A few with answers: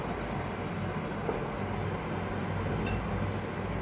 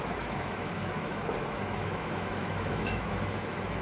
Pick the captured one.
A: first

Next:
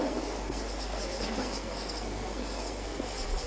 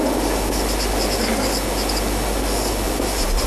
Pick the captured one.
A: second